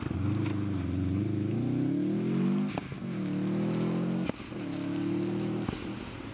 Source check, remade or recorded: recorded